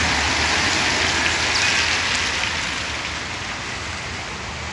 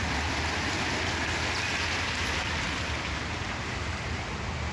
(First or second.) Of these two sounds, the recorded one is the first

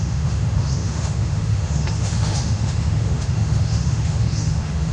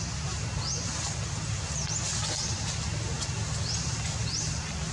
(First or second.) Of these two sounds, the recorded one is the second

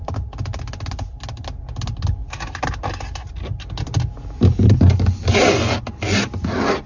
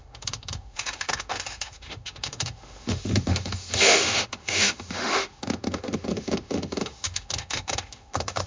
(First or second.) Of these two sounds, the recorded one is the first